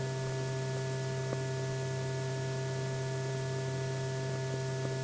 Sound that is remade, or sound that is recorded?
recorded